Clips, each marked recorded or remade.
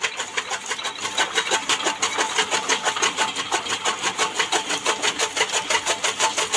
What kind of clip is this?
recorded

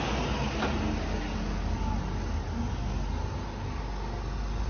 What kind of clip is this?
recorded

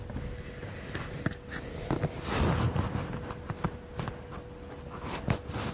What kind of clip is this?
recorded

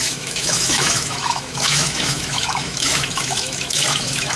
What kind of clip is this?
remade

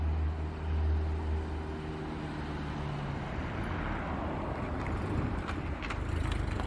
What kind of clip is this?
recorded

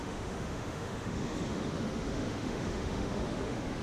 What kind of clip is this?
remade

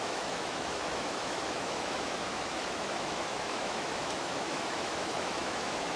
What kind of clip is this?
remade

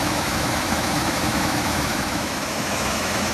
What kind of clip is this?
remade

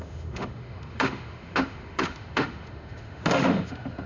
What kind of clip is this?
remade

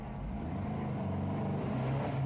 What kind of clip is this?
recorded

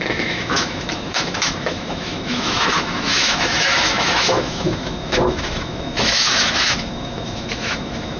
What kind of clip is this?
remade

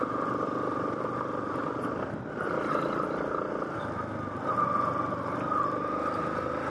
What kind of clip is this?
recorded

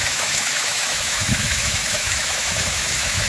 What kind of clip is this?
remade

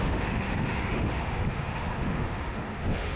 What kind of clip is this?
remade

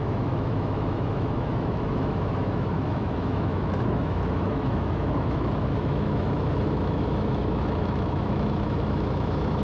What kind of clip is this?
remade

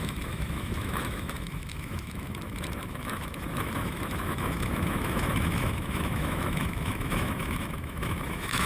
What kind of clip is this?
remade